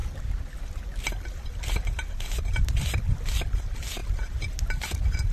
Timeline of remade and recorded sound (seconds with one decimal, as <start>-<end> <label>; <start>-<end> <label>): 0.0-5.3 recorded